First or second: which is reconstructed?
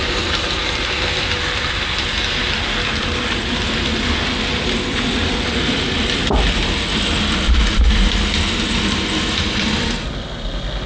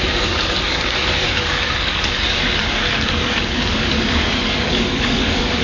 second